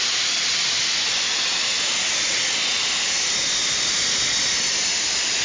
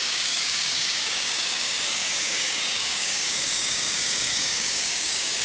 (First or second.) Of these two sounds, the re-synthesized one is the second